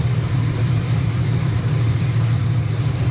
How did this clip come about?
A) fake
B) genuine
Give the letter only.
A